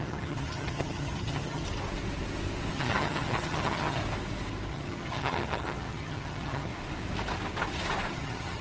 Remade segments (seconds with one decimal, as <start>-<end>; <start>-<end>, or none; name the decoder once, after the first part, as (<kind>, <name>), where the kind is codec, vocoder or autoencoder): 0.0-1.6 (vocoder, HiFi-GAN); 2.7-4.0; 4.7-6.7; 8.1-8.6